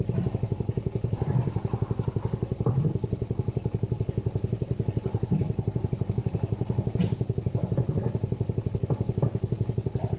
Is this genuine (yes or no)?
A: yes